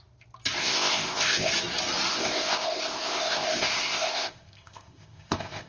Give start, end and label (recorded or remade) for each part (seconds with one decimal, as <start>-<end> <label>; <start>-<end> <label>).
0.0-0.6 recorded; 0.6-1.5 remade; 1.5-2.1 recorded; 2.1-5.7 remade